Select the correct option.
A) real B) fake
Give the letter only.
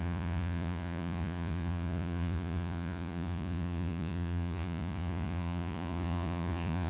B